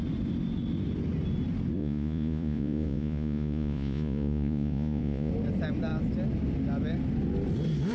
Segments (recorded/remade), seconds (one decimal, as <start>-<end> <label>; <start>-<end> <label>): 0.0-1.8 recorded; 1.8-5.3 remade; 5.3-7.9 recorded